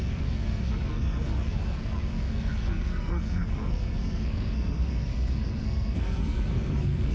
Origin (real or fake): fake